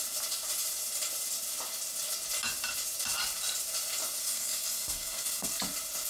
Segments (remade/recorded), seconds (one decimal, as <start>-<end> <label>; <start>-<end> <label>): 0.0-4.2 recorded; 4.2-5.6 remade; 5.6-6.1 recorded